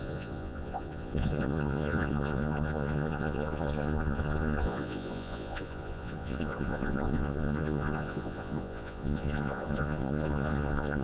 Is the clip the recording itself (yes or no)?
no